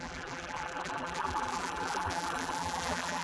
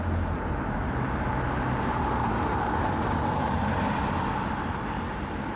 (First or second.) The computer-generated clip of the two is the first